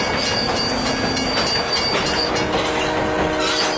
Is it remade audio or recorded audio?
recorded